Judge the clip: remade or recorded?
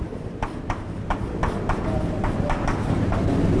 recorded